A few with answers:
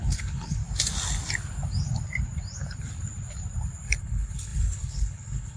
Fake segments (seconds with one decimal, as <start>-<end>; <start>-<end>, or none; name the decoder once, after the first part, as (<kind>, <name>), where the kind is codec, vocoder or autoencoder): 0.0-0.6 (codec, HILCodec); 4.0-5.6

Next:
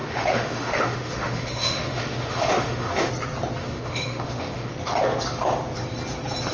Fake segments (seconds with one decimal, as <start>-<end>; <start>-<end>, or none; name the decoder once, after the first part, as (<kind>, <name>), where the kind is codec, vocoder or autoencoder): 0.0-3.1 (autoencoder, DAC-VAE); 3.6-4.7

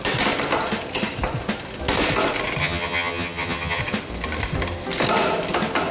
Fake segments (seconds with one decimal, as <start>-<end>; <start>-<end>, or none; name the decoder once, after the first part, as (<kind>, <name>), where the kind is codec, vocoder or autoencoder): 2.6-3.8 (vocoder, HiFi-GAN)

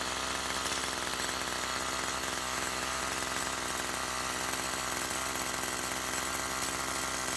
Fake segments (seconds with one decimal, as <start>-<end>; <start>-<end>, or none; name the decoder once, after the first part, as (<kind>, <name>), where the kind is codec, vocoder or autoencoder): 2.2-3.0 (autoencoder, DAC-VAE)

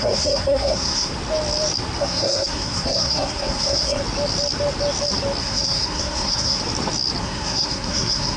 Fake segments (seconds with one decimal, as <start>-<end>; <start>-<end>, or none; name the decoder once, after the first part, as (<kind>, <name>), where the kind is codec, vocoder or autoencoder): 0.0-1.1 (codec, SNAC); 2.0-4.0; 5.4-6.6; 7.2-8.4

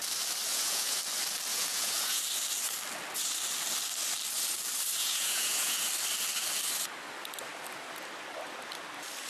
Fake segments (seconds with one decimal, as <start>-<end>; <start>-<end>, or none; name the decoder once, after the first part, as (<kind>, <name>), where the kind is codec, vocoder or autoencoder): 0.5-1.0 (vocoder, Vocos); 1.5-2.2; 5.0-5.9

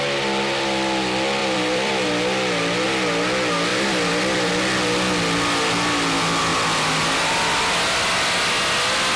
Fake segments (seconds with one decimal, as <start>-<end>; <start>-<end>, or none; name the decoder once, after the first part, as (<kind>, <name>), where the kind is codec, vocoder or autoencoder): 1.4-1.9 (vocoder, BigVGAN v2); 3.7-4.5